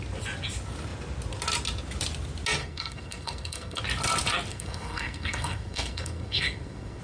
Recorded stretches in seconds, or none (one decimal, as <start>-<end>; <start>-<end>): 0.0-2.6; 3.8-4.5